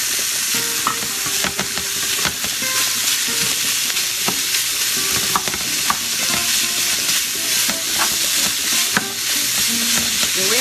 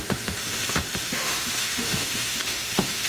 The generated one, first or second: second